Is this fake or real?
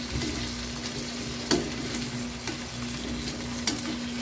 real